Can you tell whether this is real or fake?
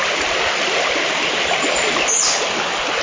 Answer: real